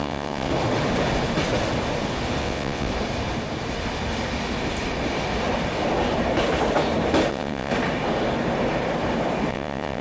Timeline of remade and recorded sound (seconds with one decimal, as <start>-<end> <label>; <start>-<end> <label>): 0.0-0.5 remade; 0.5-2.4 recorded; 2.4-2.9 remade; 2.9-7.3 recorded; 7.3-7.7 remade; 7.7-9.5 recorded; 9.5-10.0 remade

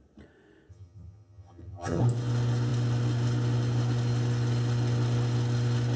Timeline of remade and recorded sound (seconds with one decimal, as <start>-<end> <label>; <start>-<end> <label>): 0.0-0.7 recorded; 0.7-2.0 remade; 2.0-6.0 recorded